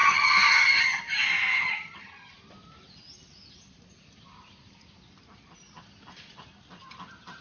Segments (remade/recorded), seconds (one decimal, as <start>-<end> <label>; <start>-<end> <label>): 0.0-1.0 remade; 1.0-1.5 recorded; 1.5-2.3 remade; 2.3-7.4 recorded